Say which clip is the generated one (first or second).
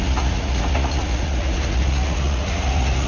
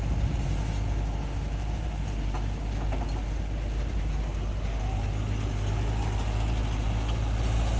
first